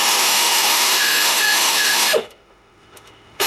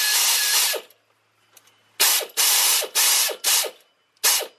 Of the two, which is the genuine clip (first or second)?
second